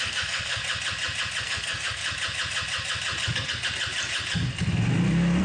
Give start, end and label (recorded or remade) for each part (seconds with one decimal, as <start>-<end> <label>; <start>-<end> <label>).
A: 0.0-0.6 remade; 0.6-1.4 recorded; 1.4-2.0 remade; 2.0-5.4 recorded